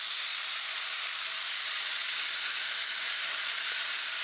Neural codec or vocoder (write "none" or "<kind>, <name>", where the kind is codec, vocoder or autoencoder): none